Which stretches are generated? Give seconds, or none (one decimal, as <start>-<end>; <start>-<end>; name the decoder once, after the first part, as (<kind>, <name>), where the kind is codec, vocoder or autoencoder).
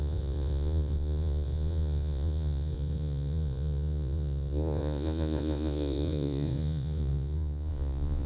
0.0-8.3 (vocoder, Vocos)